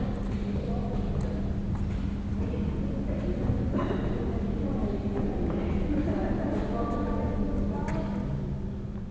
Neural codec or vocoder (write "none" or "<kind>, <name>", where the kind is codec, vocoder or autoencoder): none